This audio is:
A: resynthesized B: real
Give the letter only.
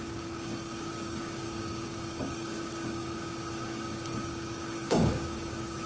A